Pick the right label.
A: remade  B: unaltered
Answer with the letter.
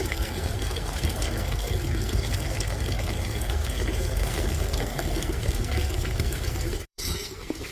A